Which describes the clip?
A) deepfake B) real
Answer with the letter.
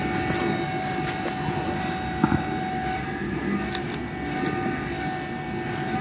B